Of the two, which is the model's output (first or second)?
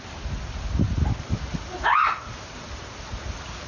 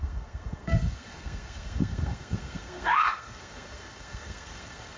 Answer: second